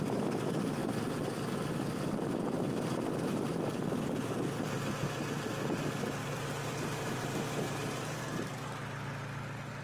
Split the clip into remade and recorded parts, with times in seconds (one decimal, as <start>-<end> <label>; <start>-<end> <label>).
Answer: 0.0-6.2 recorded; 6.2-8.5 remade; 8.5-9.8 recorded